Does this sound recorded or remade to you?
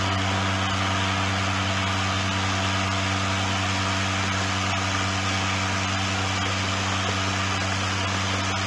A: recorded